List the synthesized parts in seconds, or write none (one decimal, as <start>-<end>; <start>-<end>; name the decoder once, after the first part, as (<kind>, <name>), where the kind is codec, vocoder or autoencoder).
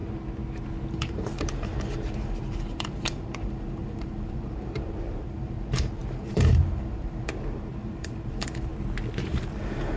0.9-8.7 (vocoder, BigVGAN v2); 9.2-10.0